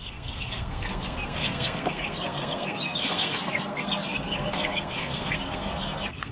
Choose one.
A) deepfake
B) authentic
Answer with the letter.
A